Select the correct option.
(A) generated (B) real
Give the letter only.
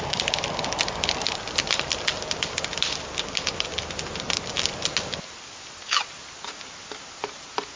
B